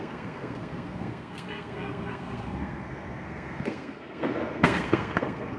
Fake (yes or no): yes